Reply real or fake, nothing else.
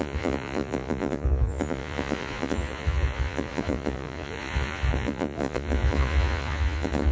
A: fake